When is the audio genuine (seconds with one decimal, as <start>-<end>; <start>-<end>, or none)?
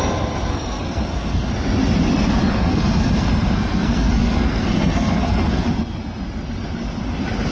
0.0-0.5; 1.5-2.5; 5.6-7.5